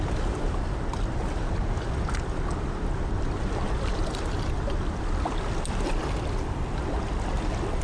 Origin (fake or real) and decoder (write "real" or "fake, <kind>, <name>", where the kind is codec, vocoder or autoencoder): real